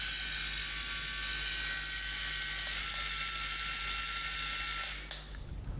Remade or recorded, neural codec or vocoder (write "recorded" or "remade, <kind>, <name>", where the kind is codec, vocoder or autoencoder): recorded